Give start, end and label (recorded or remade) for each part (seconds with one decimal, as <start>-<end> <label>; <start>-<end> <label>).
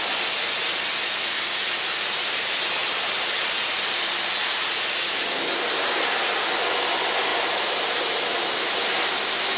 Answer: 0.0-2.8 recorded; 2.8-4.0 remade; 4.0-7.3 recorded; 7.3-8.0 remade; 8.0-9.6 recorded